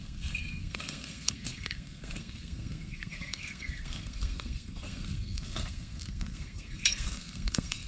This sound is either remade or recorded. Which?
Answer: remade